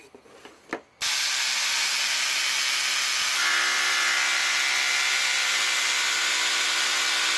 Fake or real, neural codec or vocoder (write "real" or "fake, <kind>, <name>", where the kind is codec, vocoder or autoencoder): real